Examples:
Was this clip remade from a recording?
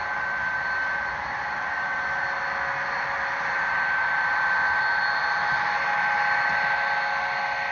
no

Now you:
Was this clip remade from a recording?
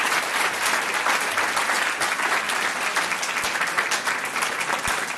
no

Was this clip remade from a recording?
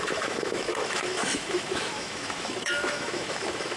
yes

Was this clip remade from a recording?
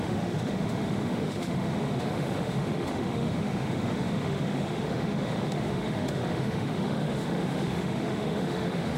yes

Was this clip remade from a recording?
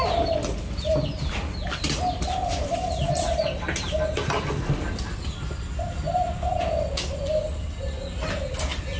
no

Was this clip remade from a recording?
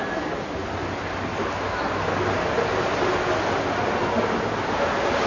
no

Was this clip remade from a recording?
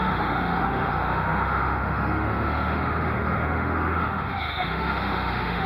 yes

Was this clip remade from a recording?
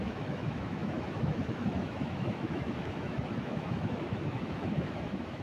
yes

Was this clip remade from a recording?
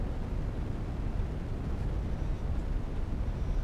no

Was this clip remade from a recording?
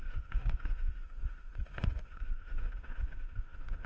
yes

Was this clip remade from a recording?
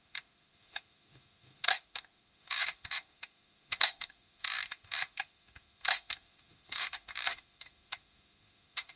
yes